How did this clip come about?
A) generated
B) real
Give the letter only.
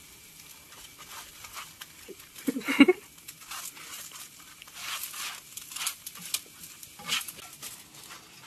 B